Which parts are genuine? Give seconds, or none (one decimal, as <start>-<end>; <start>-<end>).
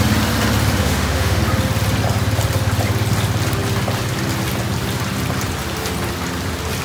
0.0-0.8; 1.4-6.8